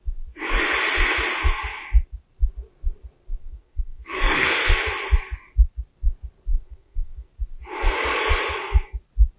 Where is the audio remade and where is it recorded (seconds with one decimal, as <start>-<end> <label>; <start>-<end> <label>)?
0.0-3.4 recorded; 3.4-4.8 remade; 4.8-6.5 recorded; 6.5-7.3 remade; 7.3-9.4 recorded